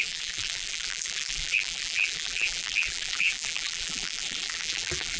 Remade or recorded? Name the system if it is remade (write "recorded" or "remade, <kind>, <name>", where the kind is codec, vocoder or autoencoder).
remade, vocoder, BigVGAN v2